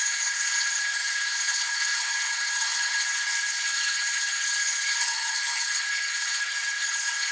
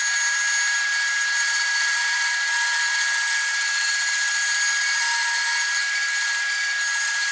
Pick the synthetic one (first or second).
first